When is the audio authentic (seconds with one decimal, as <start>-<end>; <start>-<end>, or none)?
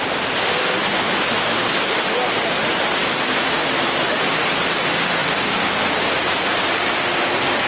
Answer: 0.0-7.7